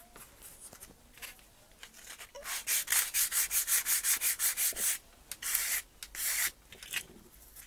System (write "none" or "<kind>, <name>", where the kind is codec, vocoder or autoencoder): none